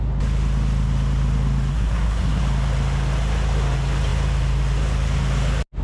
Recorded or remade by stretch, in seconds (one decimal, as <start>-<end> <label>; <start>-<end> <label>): 0.0-1.7 recorded; 1.7-2.4 remade; 2.4-5.8 recorded